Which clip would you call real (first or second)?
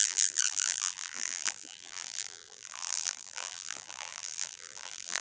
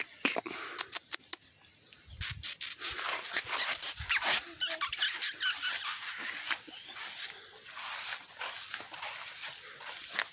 second